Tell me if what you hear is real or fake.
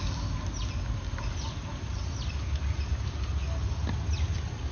real